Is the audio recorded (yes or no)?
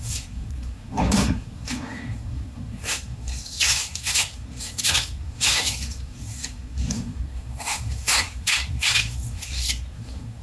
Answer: no